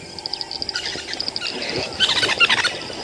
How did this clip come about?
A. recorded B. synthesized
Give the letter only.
A